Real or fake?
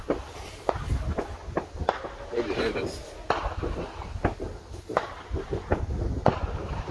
real